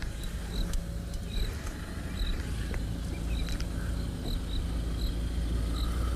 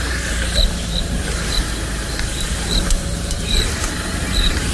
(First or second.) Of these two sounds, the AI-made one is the second